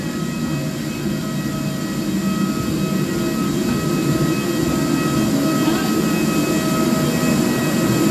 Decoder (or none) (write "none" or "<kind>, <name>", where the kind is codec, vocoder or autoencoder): none